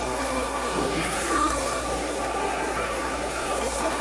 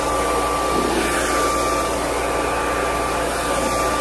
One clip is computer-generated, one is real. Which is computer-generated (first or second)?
first